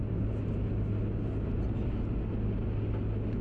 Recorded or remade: recorded